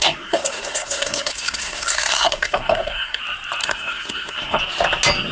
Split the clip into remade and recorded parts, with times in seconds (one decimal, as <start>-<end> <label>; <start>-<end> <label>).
0.0-3.2 remade; 3.2-3.6 recorded; 3.6-4.6 remade; 4.6-5.3 recorded